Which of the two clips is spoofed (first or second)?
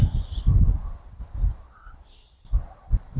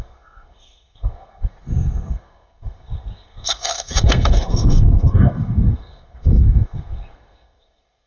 second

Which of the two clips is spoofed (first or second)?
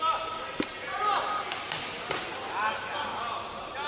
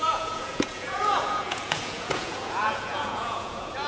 second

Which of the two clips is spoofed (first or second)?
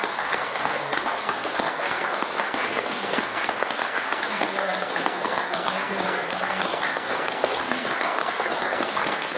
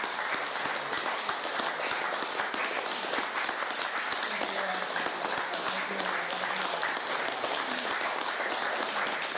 first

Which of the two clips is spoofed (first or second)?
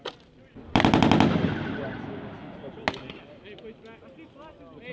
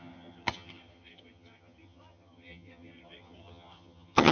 second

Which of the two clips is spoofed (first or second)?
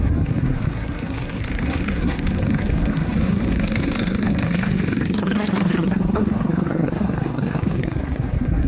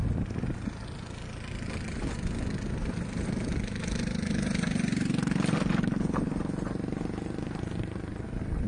first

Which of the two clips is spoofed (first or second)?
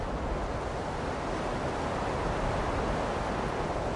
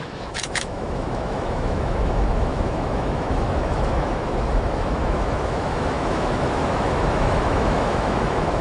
second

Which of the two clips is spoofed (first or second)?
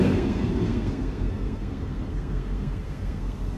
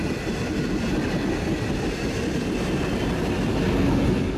first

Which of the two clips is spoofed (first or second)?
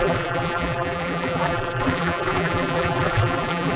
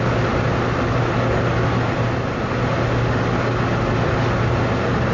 first